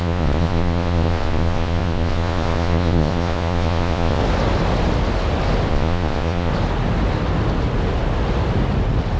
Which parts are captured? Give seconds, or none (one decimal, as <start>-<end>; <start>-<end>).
4.2-5.7; 6.5-9.2